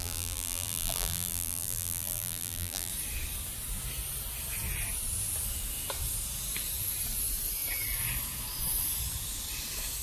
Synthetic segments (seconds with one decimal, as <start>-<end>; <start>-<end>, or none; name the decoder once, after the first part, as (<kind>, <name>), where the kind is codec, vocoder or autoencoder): 0.0-2.9 (vocoder, BigVGAN v2)